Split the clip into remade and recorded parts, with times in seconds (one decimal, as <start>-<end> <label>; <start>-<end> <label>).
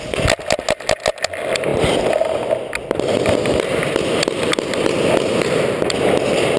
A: 0.0-6.6 recorded